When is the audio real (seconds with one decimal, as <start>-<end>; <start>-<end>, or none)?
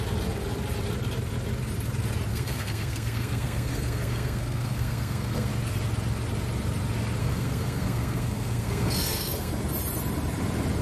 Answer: 0.0-2.3; 5.5-7.2; 9.5-10.8